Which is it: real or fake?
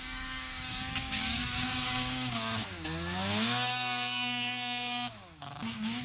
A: fake